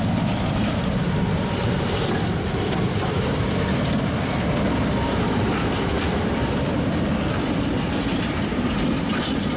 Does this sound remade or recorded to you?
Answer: recorded